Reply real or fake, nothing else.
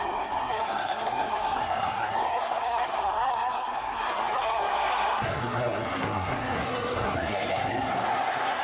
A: fake